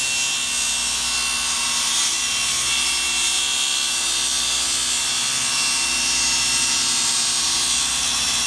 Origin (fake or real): real